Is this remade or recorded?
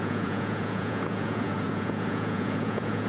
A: remade